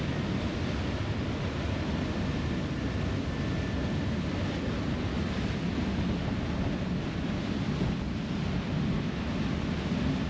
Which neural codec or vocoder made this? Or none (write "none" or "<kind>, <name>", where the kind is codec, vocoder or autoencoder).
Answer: none